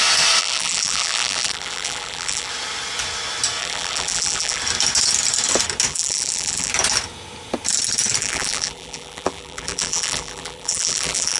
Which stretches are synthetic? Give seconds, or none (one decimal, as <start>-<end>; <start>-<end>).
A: 0.4-2.5; 3.6-4.6; 5.9-6.7; 8.2-11.4